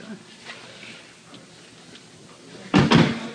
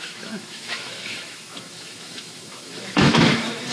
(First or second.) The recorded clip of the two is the first